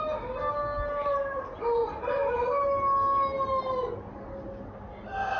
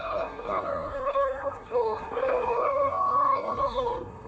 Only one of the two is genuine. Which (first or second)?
first